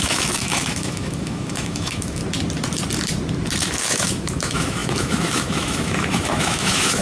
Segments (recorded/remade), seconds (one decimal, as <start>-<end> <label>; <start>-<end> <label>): 0.0-2.2 remade; 2.2-3.6 recorded; 3.6-7.0 remade

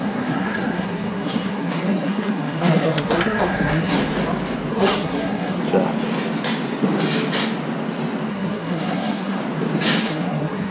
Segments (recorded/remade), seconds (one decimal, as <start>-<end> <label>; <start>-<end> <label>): 0.0-4.0 remade; 4.0-4.7 recorded; 4.7-5.6 remade; 5.6-8.3 recorded; 8.3-9.4 remade; 9.4-10.0 recorded; 10.0-10.7 remade

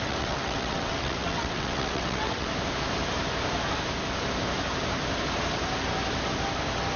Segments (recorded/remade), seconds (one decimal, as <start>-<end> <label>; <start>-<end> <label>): 0.0-2.5 remade; 2.5-7.0 recorded

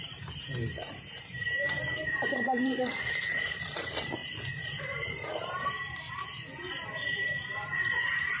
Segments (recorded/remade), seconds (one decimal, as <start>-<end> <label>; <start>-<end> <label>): 0.0-4.2 remade; 4.2-4.8 recorded; 4.8-6.2 remade; 6.2-6.7 recorded; 6.7-8.4 remade

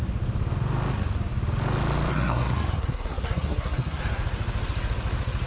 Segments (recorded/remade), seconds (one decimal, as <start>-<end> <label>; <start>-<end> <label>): 0.0-2.1 recorded; 2.1-4.0 remade; 4.0-5.5 recorded

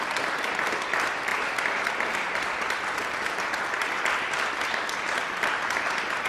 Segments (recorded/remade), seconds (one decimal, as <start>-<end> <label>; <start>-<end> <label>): 0.0-6.3 recorded